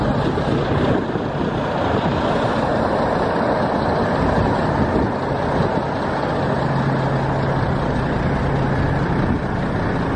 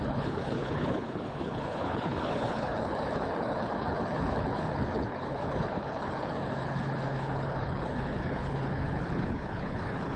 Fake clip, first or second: second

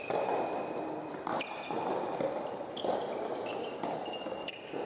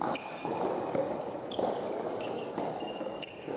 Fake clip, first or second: second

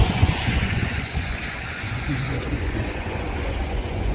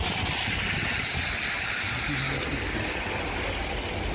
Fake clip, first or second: first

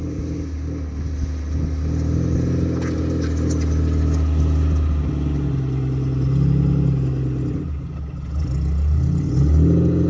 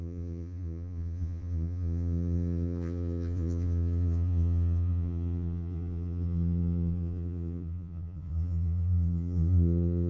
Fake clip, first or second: second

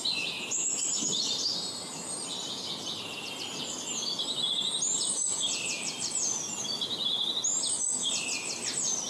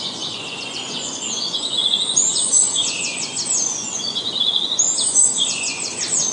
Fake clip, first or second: second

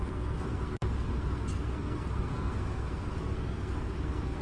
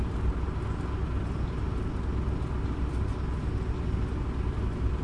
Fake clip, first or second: first